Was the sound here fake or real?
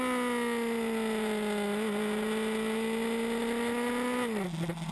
real